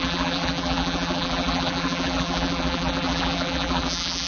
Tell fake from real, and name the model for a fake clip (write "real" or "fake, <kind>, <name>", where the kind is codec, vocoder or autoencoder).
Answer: fake, vocoder, BigVGAN v2